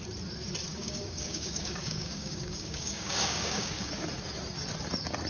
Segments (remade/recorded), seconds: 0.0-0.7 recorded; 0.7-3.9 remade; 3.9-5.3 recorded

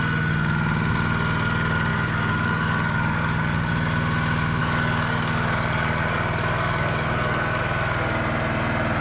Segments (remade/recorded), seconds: 0.0-1.9 recorded; 1.9-3.7 remade; 3.7-4.6 recorded; 4.6-7.6 remade; 7.6-9.0 recorded

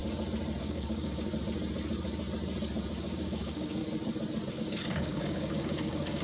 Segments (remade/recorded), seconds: 0.0-0.6 recorded; 0.6-1.3 remade; 1.3-2.9 recorded; 2.9-3.8 remade; 3.8-4.5 recorded; 4.5-6.2 remade

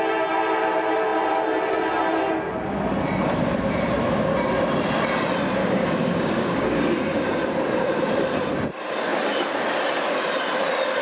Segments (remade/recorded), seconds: 0.0-5.6 recorded; 5.6-6.8 remade; 6.8-11.0 recorded